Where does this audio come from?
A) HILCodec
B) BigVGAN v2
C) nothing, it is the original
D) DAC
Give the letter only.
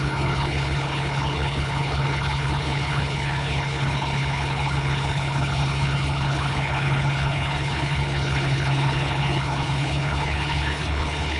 A